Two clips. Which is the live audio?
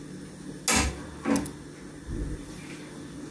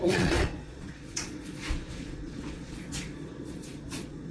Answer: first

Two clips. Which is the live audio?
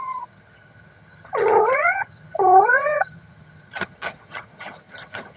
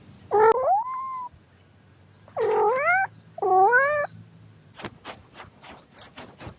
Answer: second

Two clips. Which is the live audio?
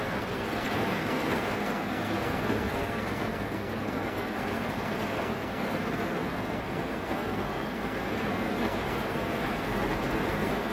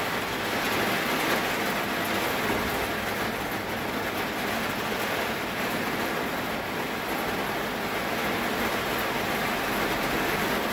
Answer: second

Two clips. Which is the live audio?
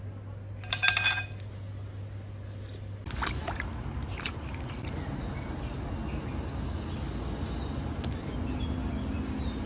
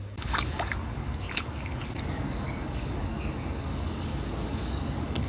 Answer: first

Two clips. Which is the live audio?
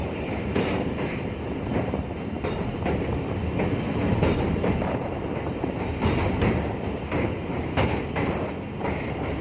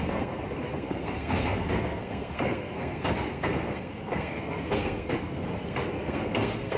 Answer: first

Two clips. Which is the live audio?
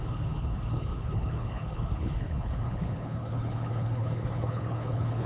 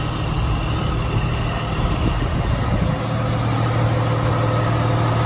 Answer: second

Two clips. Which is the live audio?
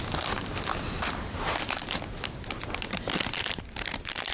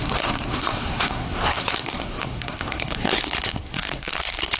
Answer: first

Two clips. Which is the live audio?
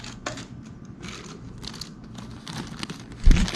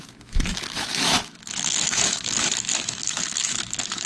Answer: first